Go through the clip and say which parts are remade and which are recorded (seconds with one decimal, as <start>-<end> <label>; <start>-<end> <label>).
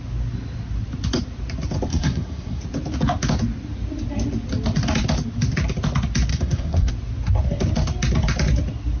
0.0-1.9 recorded; 1.9-2.6 remade; 2.6-6.3 recorded; 6.3-6.9 remade; 6.9-9.0 recorded